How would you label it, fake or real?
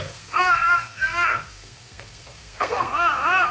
fake